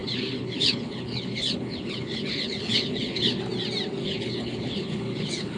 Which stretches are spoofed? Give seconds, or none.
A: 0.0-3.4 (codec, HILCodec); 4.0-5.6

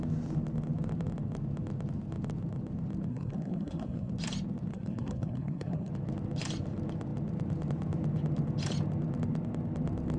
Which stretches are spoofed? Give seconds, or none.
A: 3.1-4.1 (codec, SNAC); 4.7-5.9

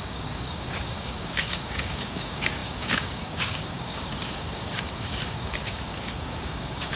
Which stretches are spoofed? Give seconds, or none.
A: 0.0-7.0 (codec, DAC)

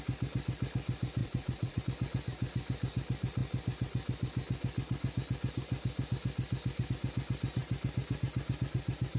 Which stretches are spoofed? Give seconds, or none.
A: 1.2-1.8 (vocoder, Vocos)

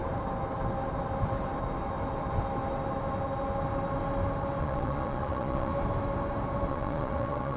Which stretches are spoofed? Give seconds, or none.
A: 4.6-5.7 (vocoder, Vocos); 6.7-7.6

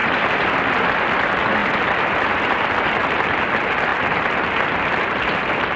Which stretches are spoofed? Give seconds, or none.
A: none

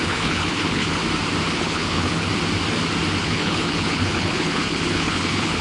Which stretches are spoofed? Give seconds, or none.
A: 0.0-1.0 (codec, HILCodec); 1.5-2.3; 3.2-5.6

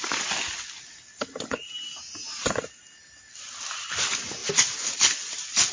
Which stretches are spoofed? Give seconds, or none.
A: none